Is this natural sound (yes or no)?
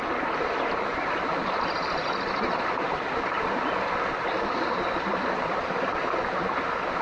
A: yes